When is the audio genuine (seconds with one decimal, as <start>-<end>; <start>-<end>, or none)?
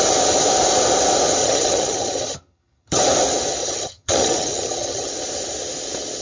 0.0-1.4; 3.0-3.6; 5.1-6.2